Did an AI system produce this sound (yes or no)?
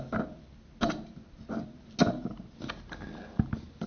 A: no